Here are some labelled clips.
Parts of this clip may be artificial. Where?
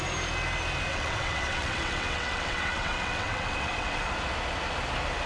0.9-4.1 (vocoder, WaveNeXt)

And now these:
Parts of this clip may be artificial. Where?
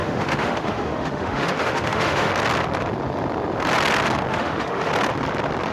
0.0-2.3 (autoencoder, DAC-VAE); 4.3-4.9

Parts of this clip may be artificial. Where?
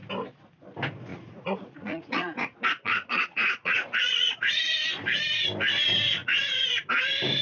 1.1-4.5 (vocoder, Vocos); 6.2-6.7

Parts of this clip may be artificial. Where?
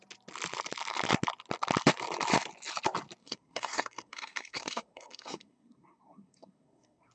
3.2-7.1 (codec, SNAC)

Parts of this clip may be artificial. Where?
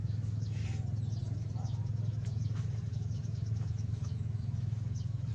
0.0-0.6 (autoencoder, DAC-VAE); 1.2-5.3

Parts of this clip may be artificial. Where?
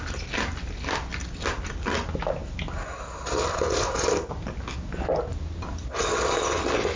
none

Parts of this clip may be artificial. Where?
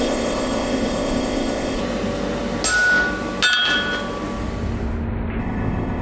0.0-1.8 (codec, ZipCodec); 5.4-6.0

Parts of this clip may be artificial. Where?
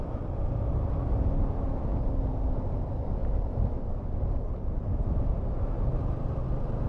none